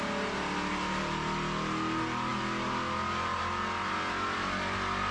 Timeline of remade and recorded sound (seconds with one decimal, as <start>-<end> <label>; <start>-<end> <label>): 0.0-5.1 recorded